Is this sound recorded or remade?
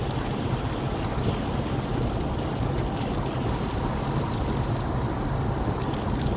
recorded